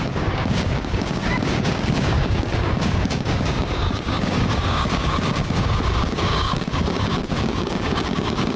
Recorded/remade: remade